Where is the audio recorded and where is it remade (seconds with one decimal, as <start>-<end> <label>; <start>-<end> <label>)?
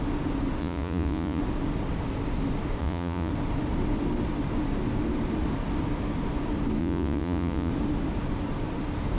0.0-0.6 recorded; 0.6-1.4 remade; 1.4-2.8 recorded; 2.8-3.3 remade; 3.3-6.8 recorded; 6.8-7.7 remade; 7.7-9.2 recorded